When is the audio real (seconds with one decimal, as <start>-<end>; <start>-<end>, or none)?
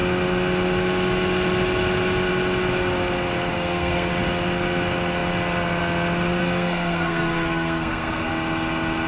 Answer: 0.0-3.5; 4.1-6.4; 8.3-9.1